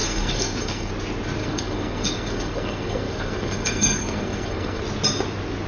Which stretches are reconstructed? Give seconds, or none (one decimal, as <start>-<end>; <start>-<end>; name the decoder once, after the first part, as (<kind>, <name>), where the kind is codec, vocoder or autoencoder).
0.0-0.9 (codec, SNAC); 1.4-4.8